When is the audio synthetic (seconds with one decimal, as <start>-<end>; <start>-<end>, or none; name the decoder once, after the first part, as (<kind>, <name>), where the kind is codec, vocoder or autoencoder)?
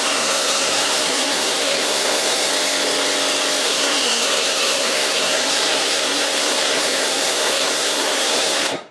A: 0.0-2.5 (codec, SNAC); 3.6-8.9